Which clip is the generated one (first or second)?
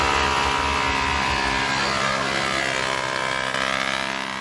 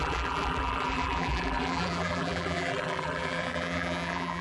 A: second